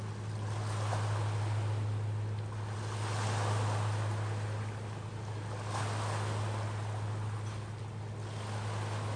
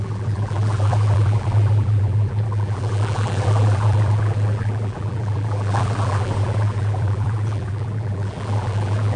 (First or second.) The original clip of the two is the first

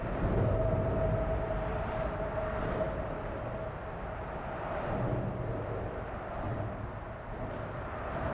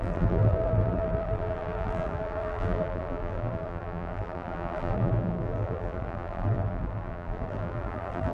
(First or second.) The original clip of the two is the first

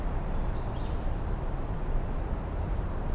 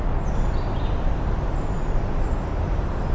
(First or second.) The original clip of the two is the second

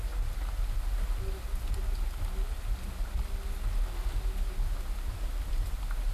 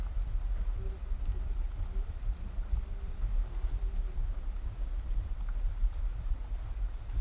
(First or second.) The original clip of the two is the first